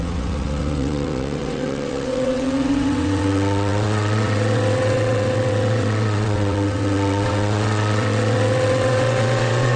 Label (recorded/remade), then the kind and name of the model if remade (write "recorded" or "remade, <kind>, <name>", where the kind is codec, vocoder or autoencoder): remade, vocoder, WaveNeXt